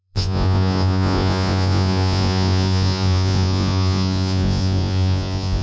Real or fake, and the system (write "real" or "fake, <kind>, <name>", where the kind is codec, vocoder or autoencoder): fake, vocoder, Vocos